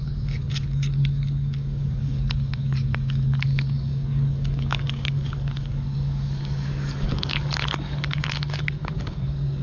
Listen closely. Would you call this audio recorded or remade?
remade